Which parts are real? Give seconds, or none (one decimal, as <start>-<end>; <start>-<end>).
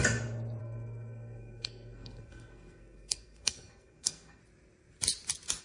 0.0-0.6; 4.4-5.6